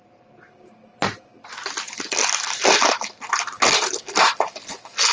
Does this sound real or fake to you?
real